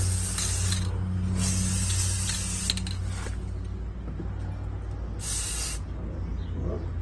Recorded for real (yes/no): yes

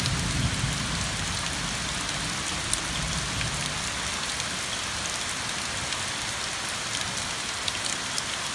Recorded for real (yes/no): yes